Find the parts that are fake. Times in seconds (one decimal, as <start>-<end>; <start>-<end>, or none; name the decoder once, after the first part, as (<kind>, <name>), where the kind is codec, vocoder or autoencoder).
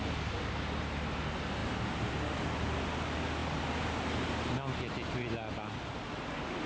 none